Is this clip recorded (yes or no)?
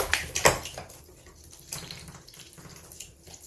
yes